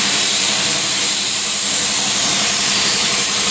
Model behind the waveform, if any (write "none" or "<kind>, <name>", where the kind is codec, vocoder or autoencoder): vocoder, BigVGAN v2